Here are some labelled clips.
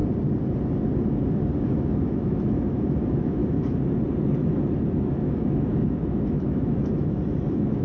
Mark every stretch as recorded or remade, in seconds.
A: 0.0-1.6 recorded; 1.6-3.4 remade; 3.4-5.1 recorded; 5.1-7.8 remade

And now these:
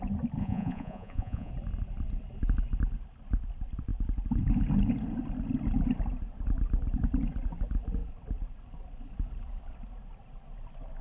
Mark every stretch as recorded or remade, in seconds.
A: 0.0-0.4 recorded; 0.4-1.5 remade; 1.5-11.0 recorded

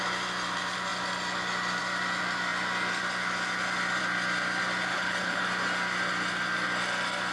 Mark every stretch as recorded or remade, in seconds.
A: 0.0-4.9 recorded; 4.9-5.4 remade; 5.4-7.3 recorded

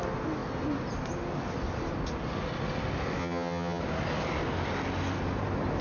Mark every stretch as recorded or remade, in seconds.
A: 0.0-3.2 recorded; 3.2-3.8 remade; 3.8-5.8 recorded

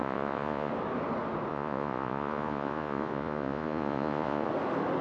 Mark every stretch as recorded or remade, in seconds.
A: 0.0-0.7 remade; 0.7-1.5 recorded; 1.5-4.5 remade; 4.5-5.0 recorded

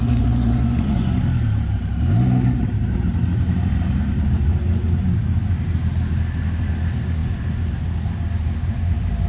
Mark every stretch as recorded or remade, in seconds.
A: 0.0-1.2 remade; 1.2-9.3 recorded

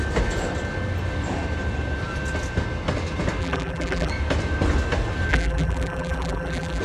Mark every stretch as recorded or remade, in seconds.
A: 0.0-3.4 recorded; 3.4-4.1 remade; 4.1-5.3 recorded; 5.3-6.8 remade

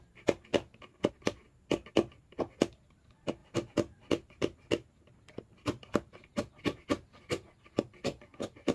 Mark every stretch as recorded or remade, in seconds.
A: 0.0-0.5 recorded; 0.5-1.1 remade; 1.1-3.4 recorded; 3.4-6.6 remade; 6.6-8.7 recorded